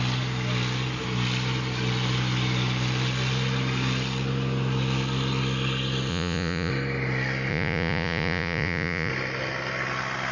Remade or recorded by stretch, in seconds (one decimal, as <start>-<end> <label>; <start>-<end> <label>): 0.0-6.1 recorded; 6.1-6.7 remade; 6.7-7.5 recorded; 7.5-9.1 remade; 9.1-10.3 recorded